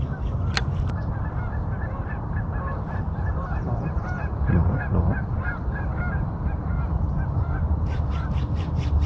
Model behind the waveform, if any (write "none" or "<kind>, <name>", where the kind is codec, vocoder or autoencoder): vocoder, BigVGAN v2